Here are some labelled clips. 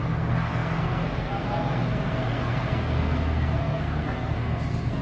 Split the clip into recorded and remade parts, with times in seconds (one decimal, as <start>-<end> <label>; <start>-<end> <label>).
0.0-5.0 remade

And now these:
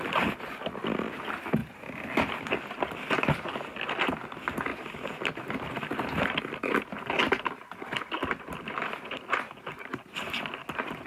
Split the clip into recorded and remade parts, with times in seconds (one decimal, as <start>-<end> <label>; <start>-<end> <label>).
0.0-11.1 recorded

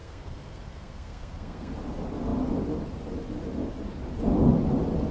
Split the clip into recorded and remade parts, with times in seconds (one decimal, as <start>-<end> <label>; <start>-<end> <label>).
0.0-1.7 remade; 1.7-5.1 recorded

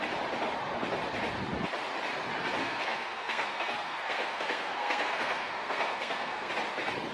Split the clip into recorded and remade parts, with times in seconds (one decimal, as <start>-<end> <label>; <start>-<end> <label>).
0.0-2.6 recorded; 2.6-6.5 remade; 6.5-7.1 recorded

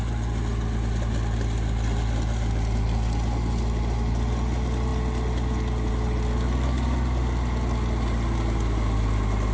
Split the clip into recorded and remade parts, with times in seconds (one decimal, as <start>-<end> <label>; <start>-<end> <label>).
0.0-9.5 recorded

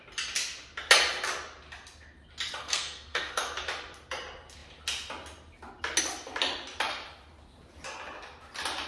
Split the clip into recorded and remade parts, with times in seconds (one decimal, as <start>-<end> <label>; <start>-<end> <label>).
0.0-2.6 recorded; 2.6-3.4 remade; 3.4-8.9 recorded